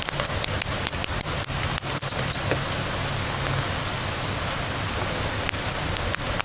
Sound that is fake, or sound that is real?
real